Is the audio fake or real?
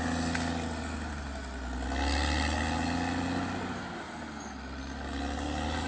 real